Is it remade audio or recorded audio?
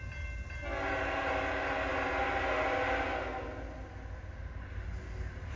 recorded